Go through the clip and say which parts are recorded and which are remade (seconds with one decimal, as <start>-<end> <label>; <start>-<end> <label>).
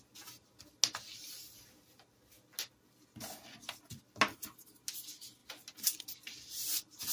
0.0-7.1 recorded